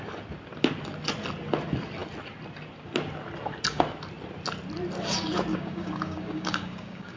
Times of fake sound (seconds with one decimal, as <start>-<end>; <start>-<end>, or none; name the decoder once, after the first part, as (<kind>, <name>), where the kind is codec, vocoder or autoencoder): 5.5-7.2 (codec, DAC)